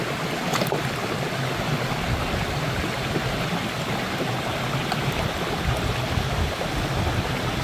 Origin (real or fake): real